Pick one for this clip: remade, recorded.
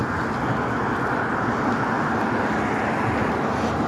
recorded